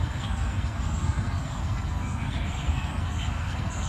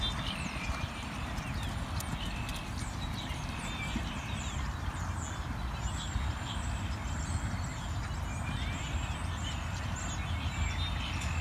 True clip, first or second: second